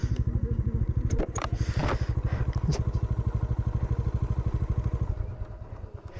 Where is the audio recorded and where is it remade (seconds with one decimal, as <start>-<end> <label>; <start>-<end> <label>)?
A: 0.0-0.8 recorded; 0.8-1.8 remade; 1.8-5.5 recorded; 5.5-6.2 remade